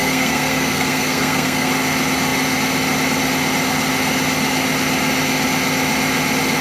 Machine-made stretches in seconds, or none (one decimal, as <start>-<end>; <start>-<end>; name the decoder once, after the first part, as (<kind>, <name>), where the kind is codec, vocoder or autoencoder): 0.0-1.7 (codec, SNAC)

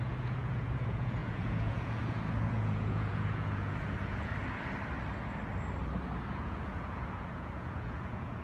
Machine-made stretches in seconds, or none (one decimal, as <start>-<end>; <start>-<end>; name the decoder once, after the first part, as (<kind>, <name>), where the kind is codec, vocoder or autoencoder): 0.0-4.3 (vocoder, Vocos); 6.3-8.4